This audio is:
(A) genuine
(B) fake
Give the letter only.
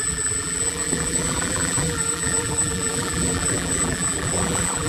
B